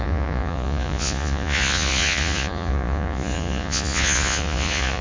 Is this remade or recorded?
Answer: remade